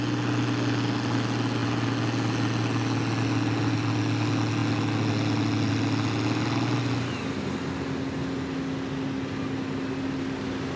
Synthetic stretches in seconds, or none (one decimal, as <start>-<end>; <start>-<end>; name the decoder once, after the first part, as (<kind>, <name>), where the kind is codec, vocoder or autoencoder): none